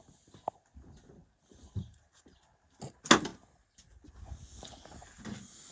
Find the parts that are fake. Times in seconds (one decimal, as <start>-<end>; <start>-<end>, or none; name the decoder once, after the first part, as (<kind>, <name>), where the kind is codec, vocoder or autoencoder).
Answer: 1.2-2.2 (vocoder, BigVGAN v2)